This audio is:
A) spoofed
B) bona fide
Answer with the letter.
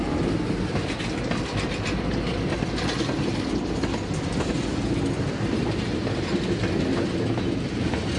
B